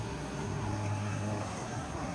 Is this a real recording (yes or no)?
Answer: no